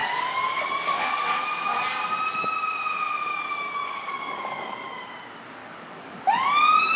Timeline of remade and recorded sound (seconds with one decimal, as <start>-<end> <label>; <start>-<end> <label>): 0.0-1.4 remade; 1.4-3.3 recorded; 3.3-5.1 remade; 5.1-5.6 recorded; 5.6-6.1 remade; 6.1-7.0 recorded